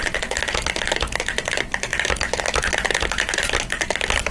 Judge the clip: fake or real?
real